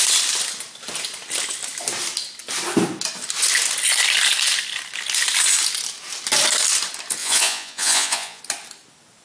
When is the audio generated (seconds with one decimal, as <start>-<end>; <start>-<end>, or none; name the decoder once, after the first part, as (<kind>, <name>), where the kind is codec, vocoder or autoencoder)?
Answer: 7.2-8.4 (vocoder, Vocos)